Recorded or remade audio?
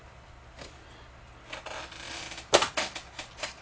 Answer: recorded